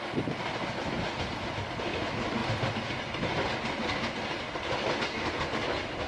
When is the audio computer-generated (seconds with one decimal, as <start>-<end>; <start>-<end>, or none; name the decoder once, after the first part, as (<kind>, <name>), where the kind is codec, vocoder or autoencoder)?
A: none